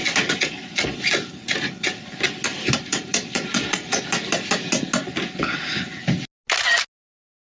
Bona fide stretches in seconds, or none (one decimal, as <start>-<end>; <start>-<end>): 0.0-2.5; 4.0-7.6

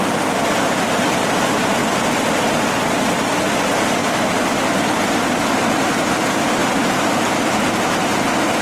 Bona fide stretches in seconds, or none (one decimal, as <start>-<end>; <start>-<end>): 0.0-1.8; 2.6-8.6

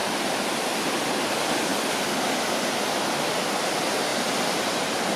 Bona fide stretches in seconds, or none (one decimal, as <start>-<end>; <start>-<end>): 1.2-5.2

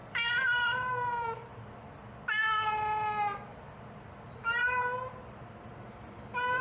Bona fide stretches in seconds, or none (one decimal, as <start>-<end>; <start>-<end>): 1.5-4.1

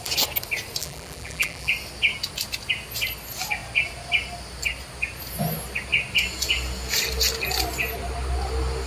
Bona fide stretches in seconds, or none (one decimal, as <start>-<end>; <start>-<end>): 0.0-0.8; 1.7-8.9